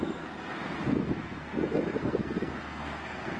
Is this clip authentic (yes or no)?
no